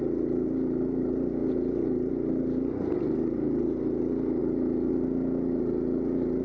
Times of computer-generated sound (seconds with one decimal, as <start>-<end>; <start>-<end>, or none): none